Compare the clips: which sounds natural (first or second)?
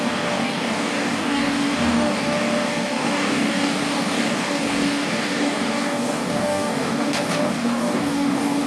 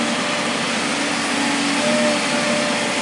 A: second